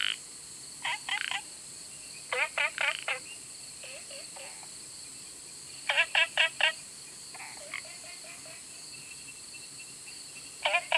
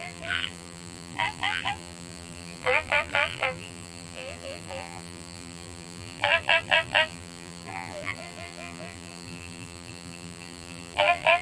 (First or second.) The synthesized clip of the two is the second